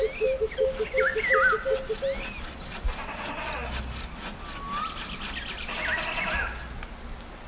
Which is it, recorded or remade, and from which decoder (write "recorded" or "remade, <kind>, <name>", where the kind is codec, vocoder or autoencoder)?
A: recorded